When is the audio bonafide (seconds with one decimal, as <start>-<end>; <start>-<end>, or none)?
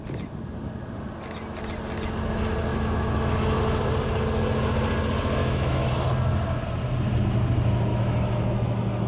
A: 0.0-2.7; 3.6-5.4; 5.9-7.9